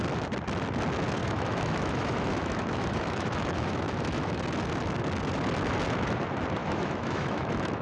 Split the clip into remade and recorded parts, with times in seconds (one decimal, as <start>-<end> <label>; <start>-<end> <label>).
0.0-1.2 recorded; 1.2-4.4 remade; 4.4-6.6 recorded; 6.6-7.8 remade